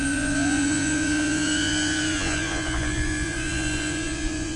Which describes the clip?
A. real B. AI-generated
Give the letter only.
B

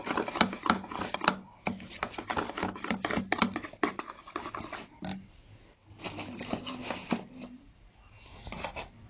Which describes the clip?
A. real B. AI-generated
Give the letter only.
A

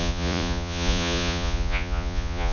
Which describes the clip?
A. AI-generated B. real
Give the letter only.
A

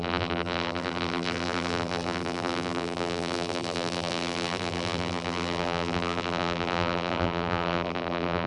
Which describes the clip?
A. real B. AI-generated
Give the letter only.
B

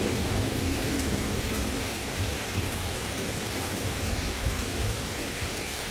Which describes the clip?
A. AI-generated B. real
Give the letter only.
A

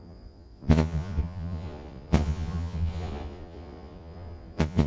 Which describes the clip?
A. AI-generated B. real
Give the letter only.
A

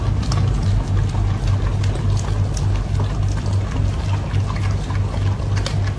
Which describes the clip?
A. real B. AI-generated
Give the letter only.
A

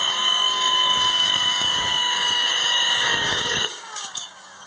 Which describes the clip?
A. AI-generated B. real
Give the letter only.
A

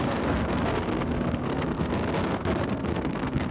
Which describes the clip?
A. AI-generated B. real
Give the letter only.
A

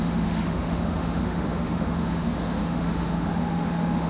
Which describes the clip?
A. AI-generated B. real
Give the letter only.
A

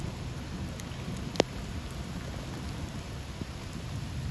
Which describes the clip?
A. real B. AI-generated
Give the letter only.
A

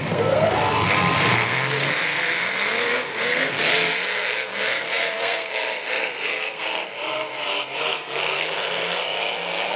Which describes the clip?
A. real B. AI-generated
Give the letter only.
B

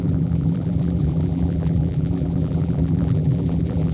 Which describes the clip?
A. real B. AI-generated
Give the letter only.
B